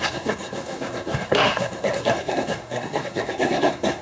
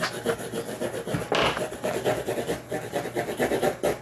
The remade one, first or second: first